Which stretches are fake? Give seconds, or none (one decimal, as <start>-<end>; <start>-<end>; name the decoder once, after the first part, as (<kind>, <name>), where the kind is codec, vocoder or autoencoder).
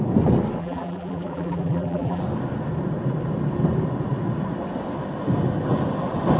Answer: 0.6-2.2 (vocoder, BigVGAN v2)